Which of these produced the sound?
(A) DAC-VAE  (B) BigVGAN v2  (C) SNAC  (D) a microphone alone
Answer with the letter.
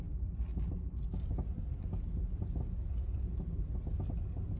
D